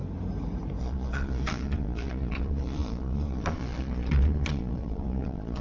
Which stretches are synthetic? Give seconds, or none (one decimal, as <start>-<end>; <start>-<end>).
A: 0.8-5.6